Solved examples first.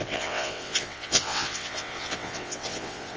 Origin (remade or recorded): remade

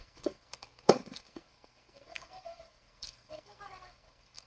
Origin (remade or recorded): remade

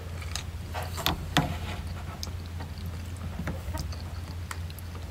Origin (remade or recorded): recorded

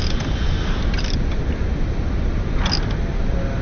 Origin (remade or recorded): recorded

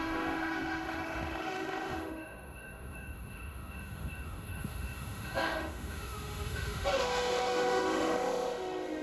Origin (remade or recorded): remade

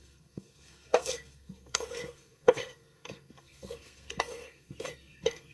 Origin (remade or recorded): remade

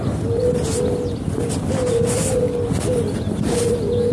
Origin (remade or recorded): recorded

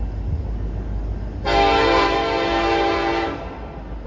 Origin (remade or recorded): recorded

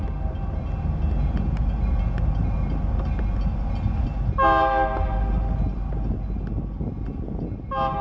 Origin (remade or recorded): recorded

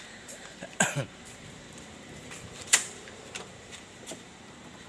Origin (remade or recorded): remade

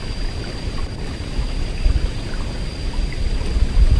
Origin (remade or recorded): recorded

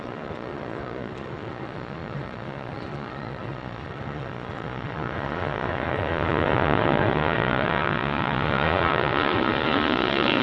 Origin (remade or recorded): remade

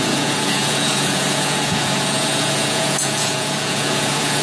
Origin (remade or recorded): remade